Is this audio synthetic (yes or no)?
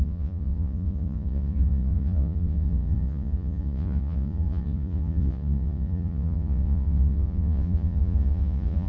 yes